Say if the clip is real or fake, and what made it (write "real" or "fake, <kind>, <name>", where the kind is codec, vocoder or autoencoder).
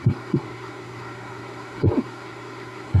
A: fake, codec, SNAC